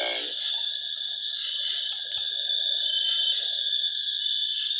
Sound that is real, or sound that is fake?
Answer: real